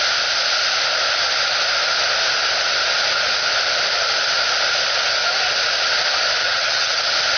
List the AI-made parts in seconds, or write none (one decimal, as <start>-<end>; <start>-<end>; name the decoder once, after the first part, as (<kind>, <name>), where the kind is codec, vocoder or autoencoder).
6.4-7.0 (vocoder, HiFi-GAN)